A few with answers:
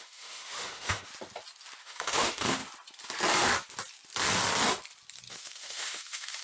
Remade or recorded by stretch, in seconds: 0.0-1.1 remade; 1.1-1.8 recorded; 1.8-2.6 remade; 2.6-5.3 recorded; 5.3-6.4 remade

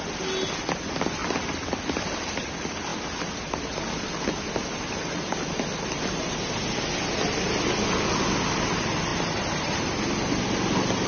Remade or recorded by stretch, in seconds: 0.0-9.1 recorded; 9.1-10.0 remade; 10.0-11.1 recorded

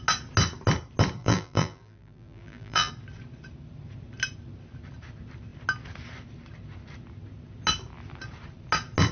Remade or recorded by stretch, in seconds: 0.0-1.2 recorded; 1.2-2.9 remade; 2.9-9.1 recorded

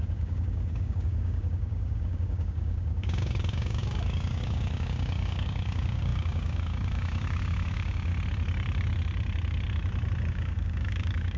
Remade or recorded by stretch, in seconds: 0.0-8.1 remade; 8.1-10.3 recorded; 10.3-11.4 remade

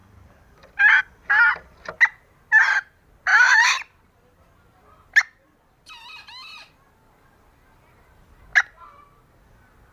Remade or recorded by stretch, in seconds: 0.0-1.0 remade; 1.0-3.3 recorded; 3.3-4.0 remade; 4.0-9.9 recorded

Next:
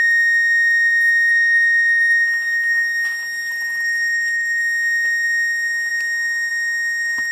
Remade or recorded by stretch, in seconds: 0.0-1.3 recorded; 1.3-2.0 remade; 2.0-3.5 recorded; 3.5-4.6 remade; 4.6-7.3 recorded

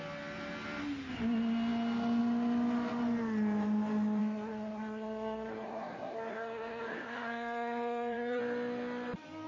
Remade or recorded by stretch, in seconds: 0.0-4.2 recorded; 4.2-8.4 remade; 8.4-9.5 recorded

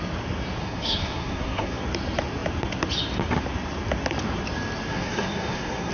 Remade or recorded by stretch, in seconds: 0.0-0.6 recorded; 0.6-1.8 remade; 1.8-4.9 recorded; 4.9-5.9 remade